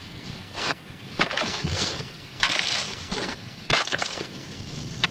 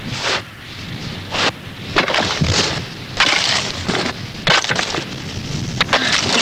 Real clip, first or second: second